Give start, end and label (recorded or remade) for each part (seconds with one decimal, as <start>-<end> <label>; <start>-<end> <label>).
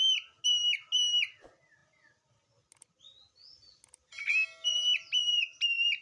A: 0.0-6.0 recorded